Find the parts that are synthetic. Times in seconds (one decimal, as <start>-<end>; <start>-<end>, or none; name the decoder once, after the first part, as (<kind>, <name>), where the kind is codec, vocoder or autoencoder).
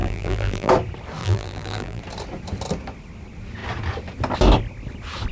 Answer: 0.0-0.7 (vocoder, BigVGAN v2); 1.2-2.0